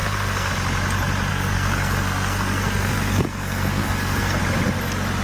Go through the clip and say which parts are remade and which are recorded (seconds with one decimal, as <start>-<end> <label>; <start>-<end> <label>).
0.0-0.5 remade; 0.5-1.3 recorded; 1.3-4.4 remade; 4.4-5.2 recorded